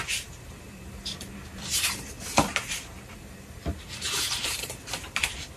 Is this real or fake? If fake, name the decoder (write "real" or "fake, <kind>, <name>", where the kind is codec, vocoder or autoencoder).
fake, vocoder, BigVGAN v2